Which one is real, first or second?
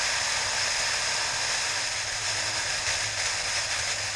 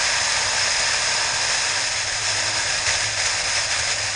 first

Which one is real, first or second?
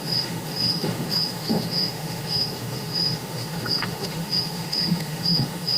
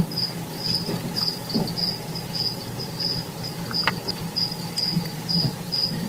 second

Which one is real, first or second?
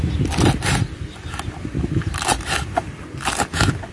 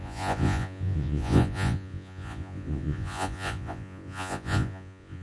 first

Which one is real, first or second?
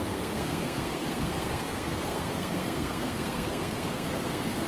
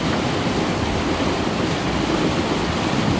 second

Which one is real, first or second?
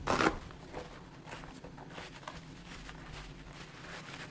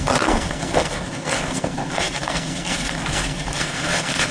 first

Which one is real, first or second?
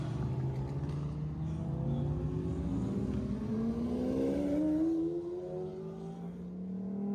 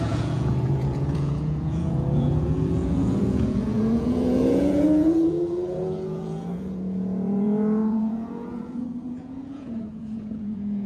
first